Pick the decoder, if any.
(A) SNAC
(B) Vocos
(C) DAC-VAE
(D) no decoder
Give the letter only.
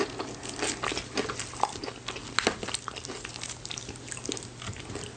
D